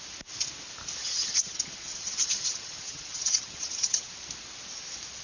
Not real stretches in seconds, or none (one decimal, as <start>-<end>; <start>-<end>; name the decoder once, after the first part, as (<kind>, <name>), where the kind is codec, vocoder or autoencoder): 1.0-4.1 (vocoder, HiFi-GAN)